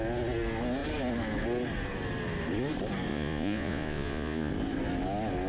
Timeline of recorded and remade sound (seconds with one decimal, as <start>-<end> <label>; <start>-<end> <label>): 0.0-3.1 recorded; 3.1-4.5 remade; 4.5-5.5 recorded